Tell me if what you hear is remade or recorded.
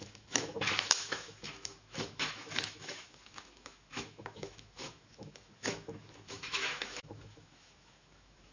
remade